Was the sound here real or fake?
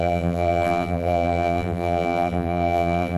fake